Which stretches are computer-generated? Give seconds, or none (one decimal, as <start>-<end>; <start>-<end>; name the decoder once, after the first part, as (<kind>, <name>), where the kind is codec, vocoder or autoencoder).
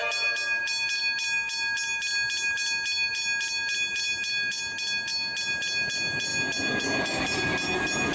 none